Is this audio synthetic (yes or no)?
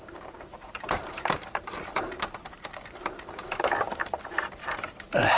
yes